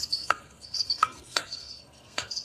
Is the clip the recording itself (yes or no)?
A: no